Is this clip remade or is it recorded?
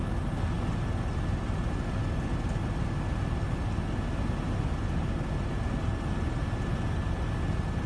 recorded